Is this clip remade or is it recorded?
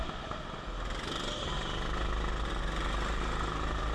recorded